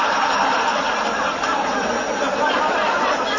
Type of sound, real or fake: real